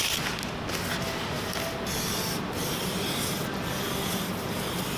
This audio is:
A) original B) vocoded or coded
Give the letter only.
A